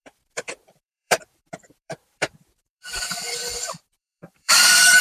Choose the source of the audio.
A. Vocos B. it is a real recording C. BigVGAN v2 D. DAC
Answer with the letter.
C